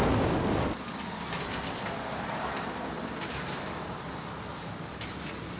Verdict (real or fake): real